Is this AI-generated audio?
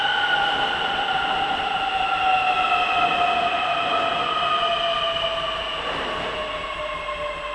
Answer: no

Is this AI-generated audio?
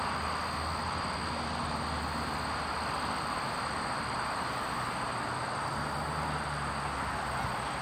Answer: no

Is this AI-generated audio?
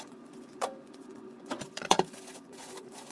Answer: yes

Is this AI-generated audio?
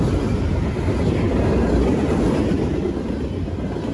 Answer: no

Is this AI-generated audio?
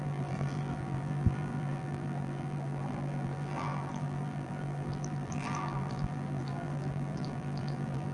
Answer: yes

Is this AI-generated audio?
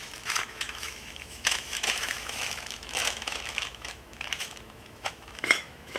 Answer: yes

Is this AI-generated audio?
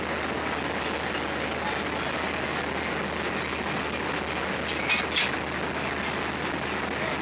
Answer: no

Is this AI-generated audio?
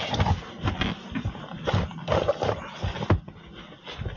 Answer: no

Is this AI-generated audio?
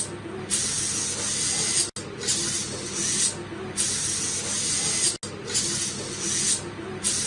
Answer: no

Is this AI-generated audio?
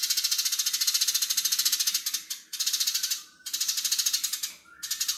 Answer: no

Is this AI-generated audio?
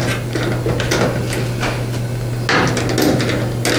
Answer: no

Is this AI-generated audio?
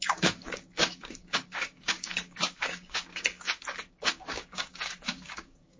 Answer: yes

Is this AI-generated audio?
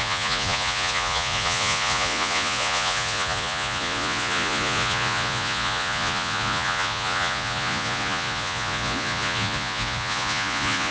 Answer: yes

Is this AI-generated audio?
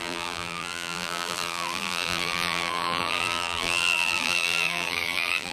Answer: yes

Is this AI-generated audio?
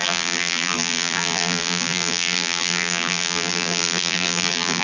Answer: yes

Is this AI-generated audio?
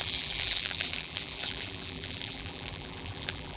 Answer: yes